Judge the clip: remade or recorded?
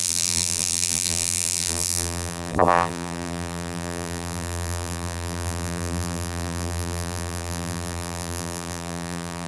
remade